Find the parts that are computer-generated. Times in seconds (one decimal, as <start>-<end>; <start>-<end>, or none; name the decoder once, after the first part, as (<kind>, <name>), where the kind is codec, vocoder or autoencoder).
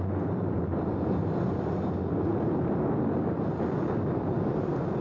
none